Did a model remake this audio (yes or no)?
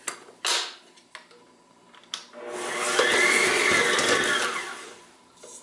no